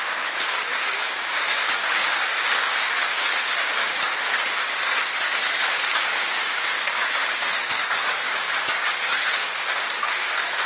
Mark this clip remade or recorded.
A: remade